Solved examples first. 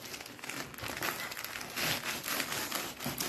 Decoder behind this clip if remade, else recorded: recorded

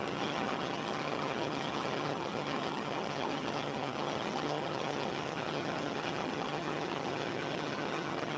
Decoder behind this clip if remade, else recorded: remade, vocoder, HiFi-GAN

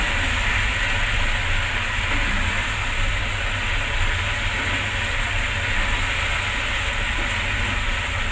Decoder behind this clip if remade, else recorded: recorded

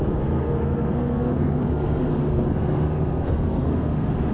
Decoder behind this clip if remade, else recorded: remade, codec, SNAC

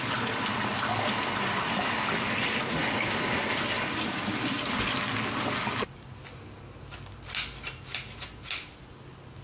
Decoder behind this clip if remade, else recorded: recorded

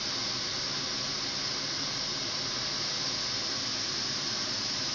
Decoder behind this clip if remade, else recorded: recorded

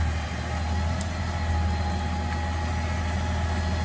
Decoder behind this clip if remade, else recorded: recorded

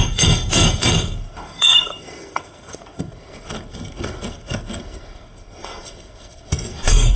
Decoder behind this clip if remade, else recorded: remade, codec, SNAC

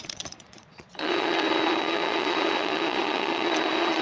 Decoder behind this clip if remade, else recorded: remade, vocoder, Vocos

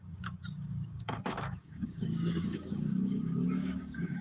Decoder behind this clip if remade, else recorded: remade, codec, DAC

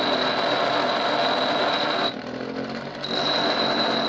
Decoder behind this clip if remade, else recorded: recorded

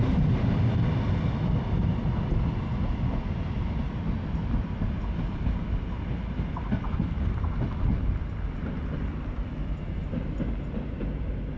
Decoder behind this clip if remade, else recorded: recorded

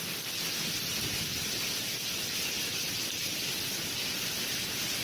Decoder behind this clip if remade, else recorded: recorded